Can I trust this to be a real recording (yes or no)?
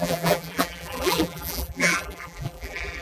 no